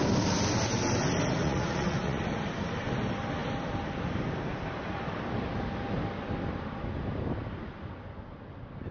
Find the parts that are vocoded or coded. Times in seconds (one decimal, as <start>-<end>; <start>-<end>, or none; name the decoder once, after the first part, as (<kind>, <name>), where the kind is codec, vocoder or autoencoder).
1.4-2.2 (vocoder, Vocos)